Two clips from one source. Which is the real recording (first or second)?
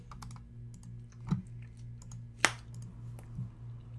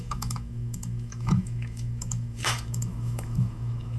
first